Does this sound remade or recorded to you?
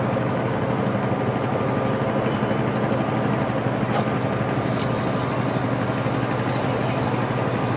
recorded